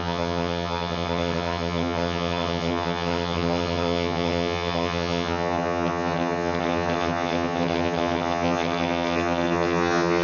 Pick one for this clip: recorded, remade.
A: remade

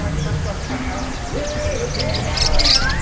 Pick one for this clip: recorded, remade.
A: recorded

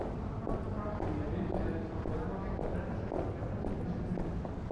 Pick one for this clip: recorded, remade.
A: recorded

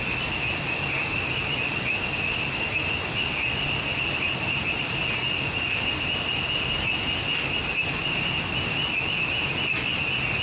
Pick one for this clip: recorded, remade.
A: recorded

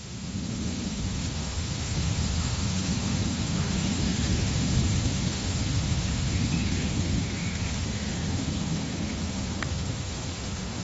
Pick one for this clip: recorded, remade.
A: remade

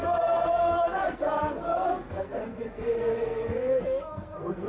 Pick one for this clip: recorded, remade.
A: remade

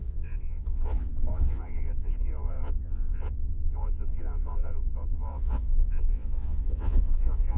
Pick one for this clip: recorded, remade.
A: remade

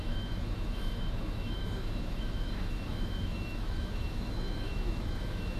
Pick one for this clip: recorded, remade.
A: remade